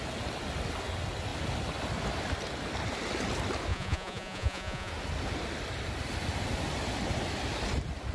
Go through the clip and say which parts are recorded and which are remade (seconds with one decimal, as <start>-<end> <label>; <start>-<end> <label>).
0.0-3.7 recorded; 3.7-4.9 remade; 4.9-8.1 recorded